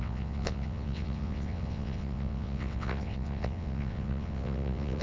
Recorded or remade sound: remade